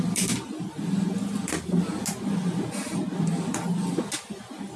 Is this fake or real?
real